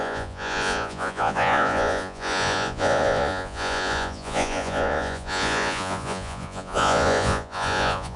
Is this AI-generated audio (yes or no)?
yes